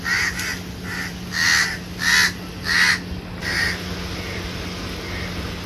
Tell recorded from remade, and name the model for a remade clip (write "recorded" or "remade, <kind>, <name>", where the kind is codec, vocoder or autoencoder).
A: recorded